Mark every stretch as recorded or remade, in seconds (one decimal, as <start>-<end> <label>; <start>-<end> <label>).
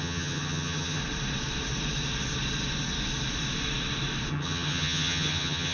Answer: 0.0-1.0 remade; 1.0-4.3 recorded; 4.3-5.7 remade